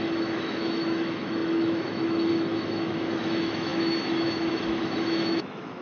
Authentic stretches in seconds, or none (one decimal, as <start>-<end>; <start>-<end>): none